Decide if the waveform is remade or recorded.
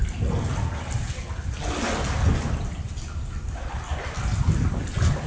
recorded